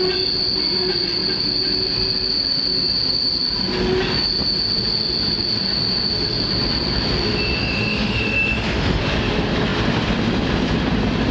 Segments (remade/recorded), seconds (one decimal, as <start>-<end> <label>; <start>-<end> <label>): 0.0-7.6 recorded; 7.6-9.0 remade; 9.0-11.3 recorded